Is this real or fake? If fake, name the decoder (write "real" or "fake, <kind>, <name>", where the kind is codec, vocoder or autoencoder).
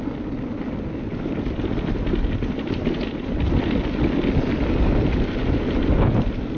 real